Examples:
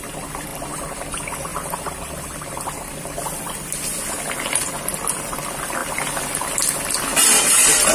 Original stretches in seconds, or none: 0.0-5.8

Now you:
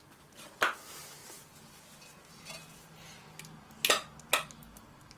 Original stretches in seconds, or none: 0.0-5.2

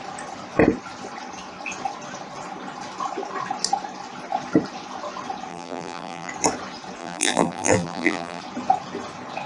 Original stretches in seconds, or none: 0.0-5.5; 6.3-7.0; 8.4-9.5

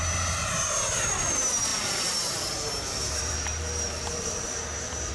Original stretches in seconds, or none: 0.0-1.7

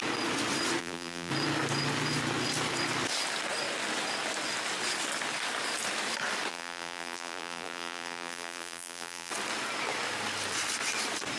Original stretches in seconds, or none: 0.0-0.8; 1.3-6.5; 9.3-11.4

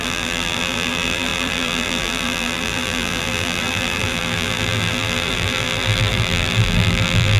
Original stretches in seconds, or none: none